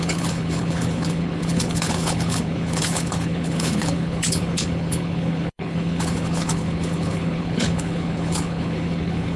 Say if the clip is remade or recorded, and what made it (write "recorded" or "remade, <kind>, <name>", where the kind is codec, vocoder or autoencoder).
remade, codec, HILCodec